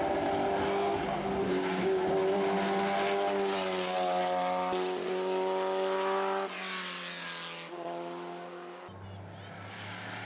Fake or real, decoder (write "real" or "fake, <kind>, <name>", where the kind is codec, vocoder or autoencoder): real